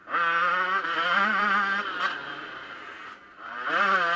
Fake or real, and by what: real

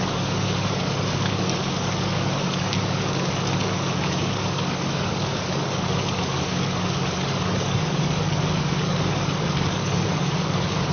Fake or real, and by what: fake, codec, DAC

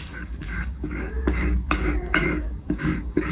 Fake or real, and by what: fake, codec, DAC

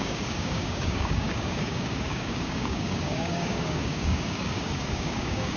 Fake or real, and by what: fake, codec, DAC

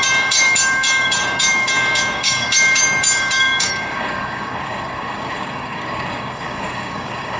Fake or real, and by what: fake, codec, DAC